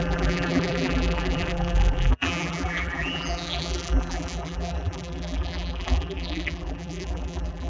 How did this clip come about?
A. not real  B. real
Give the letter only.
A